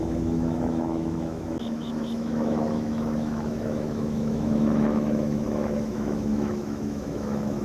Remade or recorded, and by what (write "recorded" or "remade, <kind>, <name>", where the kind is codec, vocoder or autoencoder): remade, autoencoder, DAC-VAE